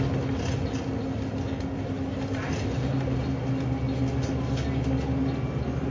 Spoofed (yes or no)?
no